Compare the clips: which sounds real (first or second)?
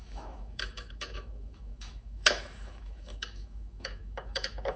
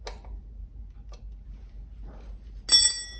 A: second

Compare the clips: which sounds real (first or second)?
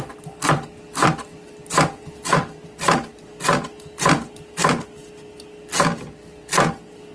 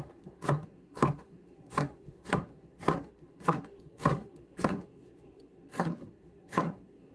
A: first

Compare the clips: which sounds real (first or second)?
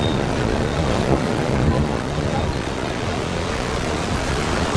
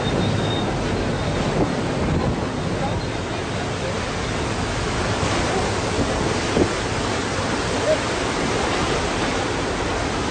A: second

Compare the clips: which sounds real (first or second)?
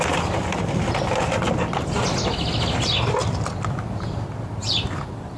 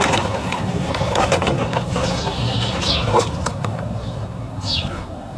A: first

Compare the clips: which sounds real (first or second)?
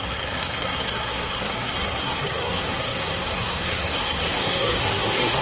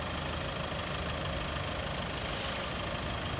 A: second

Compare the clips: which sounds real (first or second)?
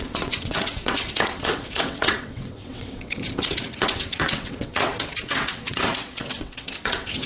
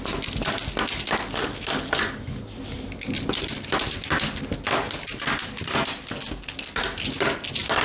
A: second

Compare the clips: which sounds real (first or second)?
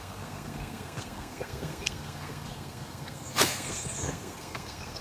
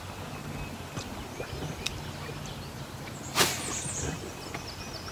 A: second